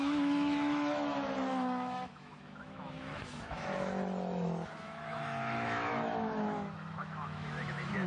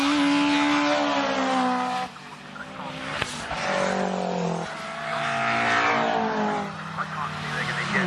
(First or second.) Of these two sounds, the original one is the second